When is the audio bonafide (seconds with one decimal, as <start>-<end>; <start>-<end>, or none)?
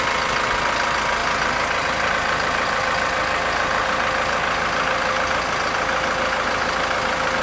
0.0-7.4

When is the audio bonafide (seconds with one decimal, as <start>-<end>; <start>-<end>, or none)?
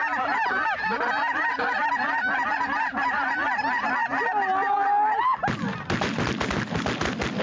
0.0-7.4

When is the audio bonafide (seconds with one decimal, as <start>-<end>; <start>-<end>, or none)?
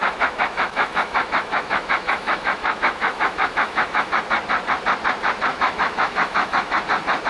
4.1-5.5; 6.8-7.3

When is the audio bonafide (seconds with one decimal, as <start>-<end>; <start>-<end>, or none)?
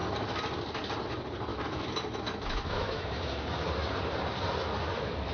0.0-1.5; 3.7-5.3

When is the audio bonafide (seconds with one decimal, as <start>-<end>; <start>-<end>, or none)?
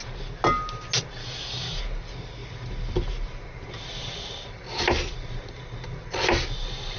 0.0-1.2; 1.8-7.0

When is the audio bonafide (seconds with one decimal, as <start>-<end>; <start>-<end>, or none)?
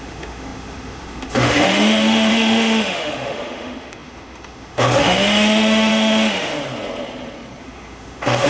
6.5-7.6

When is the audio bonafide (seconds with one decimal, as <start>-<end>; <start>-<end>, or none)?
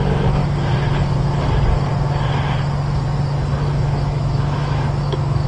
0.4-3.7